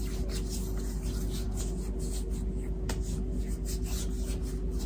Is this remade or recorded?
recorded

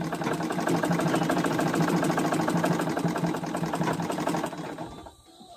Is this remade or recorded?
recorded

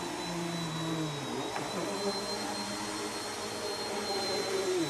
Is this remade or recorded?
recorded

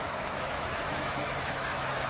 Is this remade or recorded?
remade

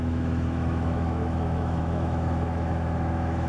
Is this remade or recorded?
remade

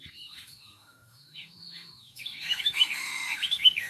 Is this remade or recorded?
remade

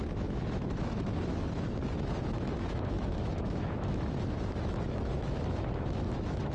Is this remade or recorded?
remade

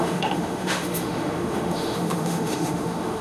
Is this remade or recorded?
remade